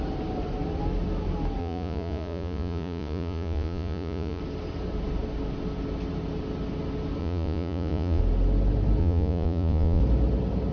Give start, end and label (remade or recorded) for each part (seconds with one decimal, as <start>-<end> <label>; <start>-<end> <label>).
0.0-1.6 recorded; 1.6-4.4 remade; 4.4-7.2 recorded; 7.2-8.2 remade; 8.2-9.0 recorded; 9.0-10.0 remade; 10.0-10.7 recorded